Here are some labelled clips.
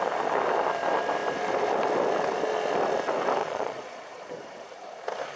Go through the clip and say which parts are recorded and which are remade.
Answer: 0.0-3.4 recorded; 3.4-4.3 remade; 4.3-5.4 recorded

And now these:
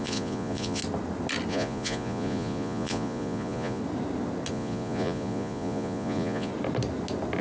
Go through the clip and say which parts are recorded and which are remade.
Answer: 0.0-0.8 remade; 0.8-1.5 recorded; 1.5-3.8 remade; 3.8-4.5 recorded; 4.5-6.5 remade; 6.5-7.4 recorded

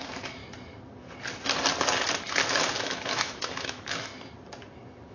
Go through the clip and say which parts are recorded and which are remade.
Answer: 0.0-0.4 remade; 0.4-2.3 recorded; 2.3-4.1 remade; 4.1-5.1 recorded

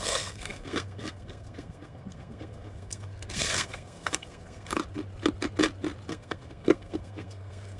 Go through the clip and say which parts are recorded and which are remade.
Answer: 0.0-4.8 remade; 4.8-6.1 recorded; 6.1-7.8 remade